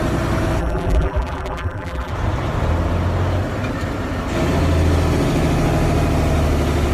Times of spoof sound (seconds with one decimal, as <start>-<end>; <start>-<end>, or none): 0.6-2.1